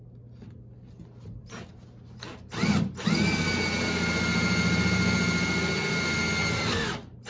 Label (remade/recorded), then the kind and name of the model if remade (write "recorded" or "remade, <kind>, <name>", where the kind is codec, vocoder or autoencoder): recorded